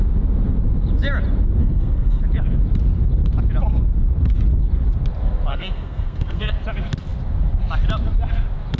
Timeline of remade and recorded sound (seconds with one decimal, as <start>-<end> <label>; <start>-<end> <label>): 0.0-1.6 recorded; 1.6-2.2 remade; 2.2-5.5 recorded; 5.5-6.5 remade; 6.5-8.8 recorded